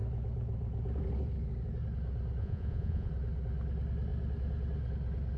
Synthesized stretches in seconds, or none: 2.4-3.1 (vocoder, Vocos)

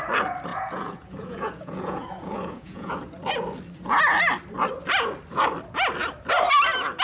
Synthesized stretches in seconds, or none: 0.5-2.9 (vocoder, Vocos)

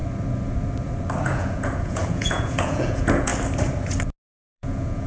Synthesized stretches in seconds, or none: 1.2-3.3 (vocoder, Vocos); 4.4-5.1

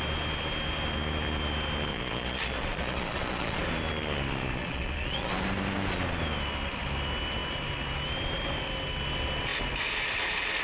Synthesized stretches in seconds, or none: 1.9-3.6 (vocoder, Vocos); 4.6-5.3

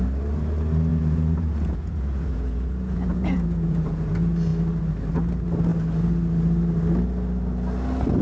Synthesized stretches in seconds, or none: 0.9-4.1 (vocoder, Vocos)

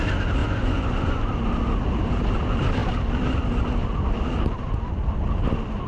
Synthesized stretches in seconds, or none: 0.4-1.2 (vocoder, Vocos)